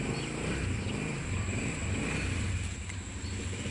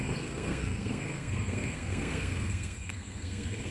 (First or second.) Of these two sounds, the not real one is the second